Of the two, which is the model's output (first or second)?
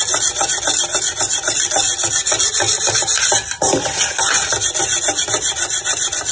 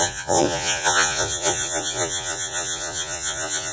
second